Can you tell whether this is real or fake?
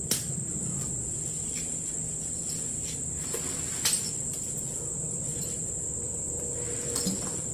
real